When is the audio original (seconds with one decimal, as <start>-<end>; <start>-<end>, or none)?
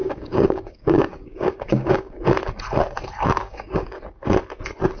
2.1-3.4; 4.0-5.0